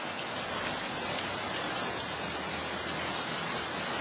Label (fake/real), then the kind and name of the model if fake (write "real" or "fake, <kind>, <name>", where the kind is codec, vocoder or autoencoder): real